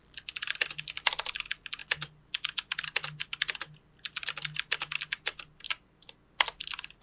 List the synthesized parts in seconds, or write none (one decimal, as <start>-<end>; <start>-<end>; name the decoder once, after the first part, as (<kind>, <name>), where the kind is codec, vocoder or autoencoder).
none